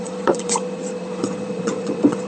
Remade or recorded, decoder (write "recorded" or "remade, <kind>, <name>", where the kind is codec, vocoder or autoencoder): remade, vocoder, Vocos